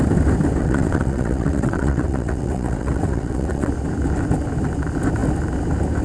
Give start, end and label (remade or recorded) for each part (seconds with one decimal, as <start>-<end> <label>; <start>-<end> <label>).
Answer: 0.0-0.6 recorded; 0.6-3.7 remade; 3.7-6.0 recorded